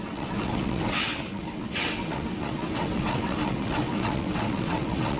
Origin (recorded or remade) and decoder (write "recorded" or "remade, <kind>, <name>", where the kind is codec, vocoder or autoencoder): remade, vocoder, WaveNeXt